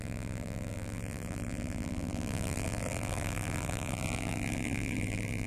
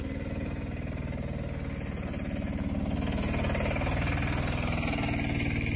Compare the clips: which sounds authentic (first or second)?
second